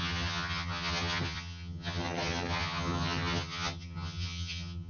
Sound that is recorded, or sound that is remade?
remade